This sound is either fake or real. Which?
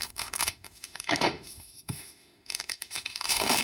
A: fake